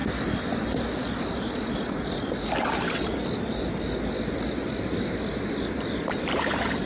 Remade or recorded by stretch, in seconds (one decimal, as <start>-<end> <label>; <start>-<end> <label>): 0.0-6.8 recorded